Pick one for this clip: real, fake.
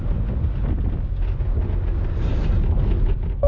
real